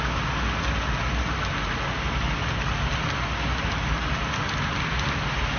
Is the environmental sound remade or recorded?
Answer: recorded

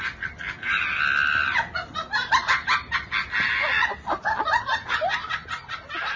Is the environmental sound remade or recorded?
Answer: recorded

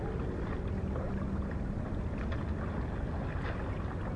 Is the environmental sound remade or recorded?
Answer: recorded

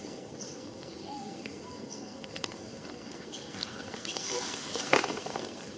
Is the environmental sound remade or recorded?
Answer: remade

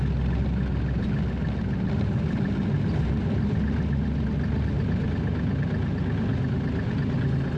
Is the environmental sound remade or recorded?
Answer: recorded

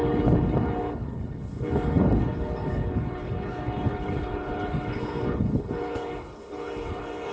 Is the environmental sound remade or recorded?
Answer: remade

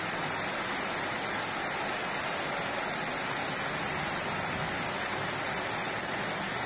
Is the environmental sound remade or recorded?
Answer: recorded